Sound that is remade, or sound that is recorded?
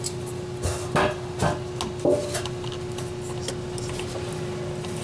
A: recorded